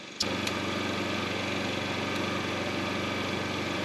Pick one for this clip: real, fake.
real